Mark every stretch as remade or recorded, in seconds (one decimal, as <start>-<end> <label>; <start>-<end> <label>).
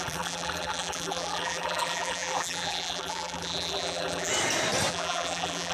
0.0-4.3 remade; 4.3-4.9 recorded; 4.9-5.7 remade